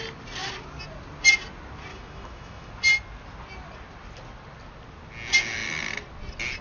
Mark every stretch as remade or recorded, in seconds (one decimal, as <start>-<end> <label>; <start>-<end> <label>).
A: 0.0-1.9 recorded; 1.9-2.7 remade; 2.7-6.6 recorded